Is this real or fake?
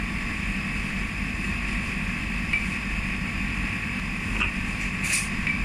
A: real